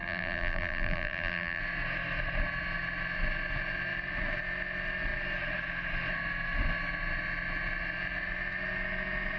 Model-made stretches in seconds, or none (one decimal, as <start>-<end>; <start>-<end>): 0.0-1.6